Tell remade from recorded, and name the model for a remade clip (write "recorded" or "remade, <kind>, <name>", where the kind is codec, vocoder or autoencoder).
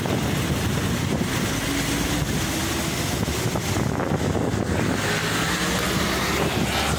recorded